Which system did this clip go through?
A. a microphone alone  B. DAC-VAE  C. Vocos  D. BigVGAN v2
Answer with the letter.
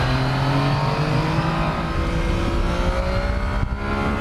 A